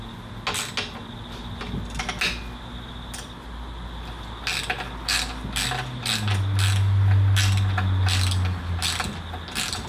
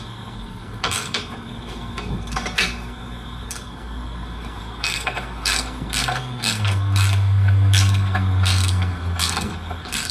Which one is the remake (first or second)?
second